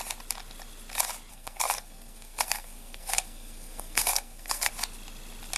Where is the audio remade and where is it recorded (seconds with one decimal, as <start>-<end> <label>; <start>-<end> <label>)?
0.0-1.3 recorded; 1.3-4.7 remade; 4.7-5.6 recorded